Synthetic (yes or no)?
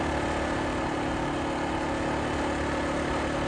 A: no